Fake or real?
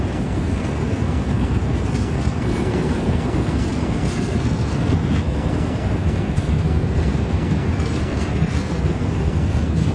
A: fake